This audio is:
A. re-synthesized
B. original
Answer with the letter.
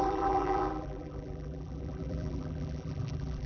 A